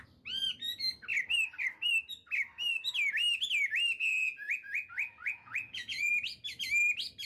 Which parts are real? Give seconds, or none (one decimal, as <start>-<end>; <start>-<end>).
0.0-4.1; 6.1-7.3